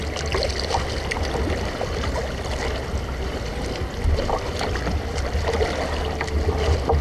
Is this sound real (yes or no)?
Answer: yes